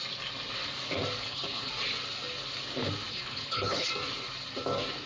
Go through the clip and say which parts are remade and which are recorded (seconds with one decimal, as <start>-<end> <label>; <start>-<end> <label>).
0.0-1.2 recorded; 1.2-1.7 remade; 1.7-3.1 recorded; 3.1-3.9 remade; 3.9-5.1 recorded